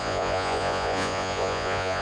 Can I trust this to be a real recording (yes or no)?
no